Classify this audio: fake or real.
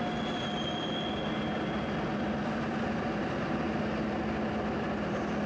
real